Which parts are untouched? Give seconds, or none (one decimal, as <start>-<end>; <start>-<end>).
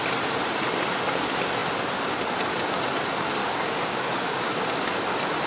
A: 0.0-3.4; 4.4-5.5